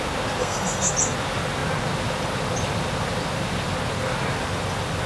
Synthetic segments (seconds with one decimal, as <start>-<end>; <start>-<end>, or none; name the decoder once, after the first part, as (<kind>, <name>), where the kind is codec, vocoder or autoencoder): 0.4-0.9 (codec, SNAC)